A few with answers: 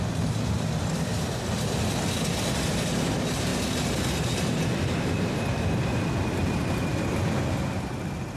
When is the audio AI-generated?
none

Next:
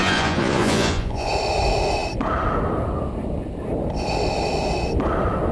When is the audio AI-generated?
0.0-1.3 (vocoder, Vocos)